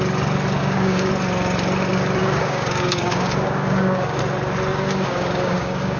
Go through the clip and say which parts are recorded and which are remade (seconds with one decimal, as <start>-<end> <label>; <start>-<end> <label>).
0.0-0.6 recorded; 0.6-1.1 remade; 1.1-2.2 recorded; 2.2-4.2 remade; 4.2-4.7 recorded; 4.7-6.0 remade